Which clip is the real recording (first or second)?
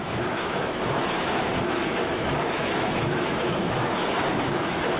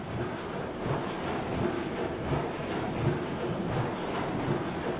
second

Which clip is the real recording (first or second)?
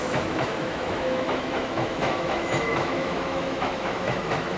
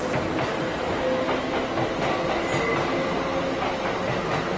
second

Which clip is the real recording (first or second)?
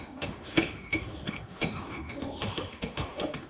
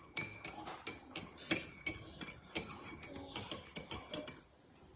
second